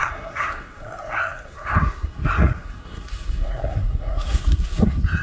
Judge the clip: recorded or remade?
remade